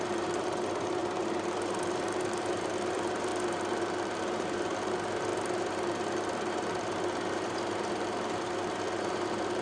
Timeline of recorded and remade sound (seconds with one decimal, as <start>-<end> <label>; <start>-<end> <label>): 0.0-9.6 remade